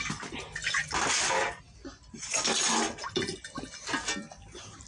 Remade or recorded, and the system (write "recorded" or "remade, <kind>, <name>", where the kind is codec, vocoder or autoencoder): recorded